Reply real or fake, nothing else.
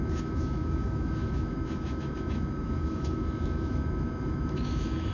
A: fake